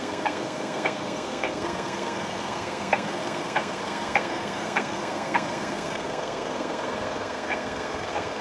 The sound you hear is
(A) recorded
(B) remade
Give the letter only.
B